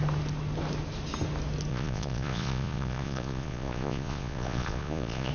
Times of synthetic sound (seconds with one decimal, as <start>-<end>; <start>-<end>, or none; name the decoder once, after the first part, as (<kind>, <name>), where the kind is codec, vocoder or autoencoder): 1.7-5.3 (vocoder, Vocos)